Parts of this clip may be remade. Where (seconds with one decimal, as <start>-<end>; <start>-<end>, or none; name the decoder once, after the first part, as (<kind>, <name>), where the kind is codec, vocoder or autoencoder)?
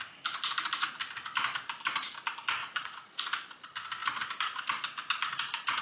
2.6-3.2 (vocoder, Vocos)